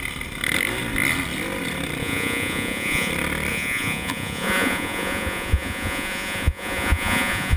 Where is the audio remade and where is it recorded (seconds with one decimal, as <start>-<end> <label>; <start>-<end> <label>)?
0.0-2.0 recorded; 2.0-3.1 remade; 3.1-3.5 recorded; 3.5-7.6 remade